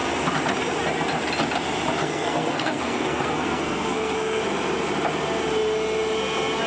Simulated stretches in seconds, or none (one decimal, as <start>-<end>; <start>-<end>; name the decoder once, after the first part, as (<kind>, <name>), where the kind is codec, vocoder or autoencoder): 2.0-4.4 (codec, SNAC)